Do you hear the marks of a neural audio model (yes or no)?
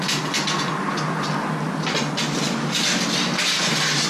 no